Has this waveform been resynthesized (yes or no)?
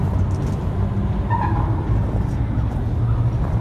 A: no